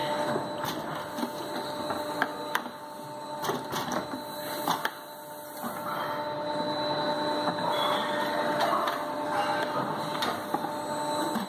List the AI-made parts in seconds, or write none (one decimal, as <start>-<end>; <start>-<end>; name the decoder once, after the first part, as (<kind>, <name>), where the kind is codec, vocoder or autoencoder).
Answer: none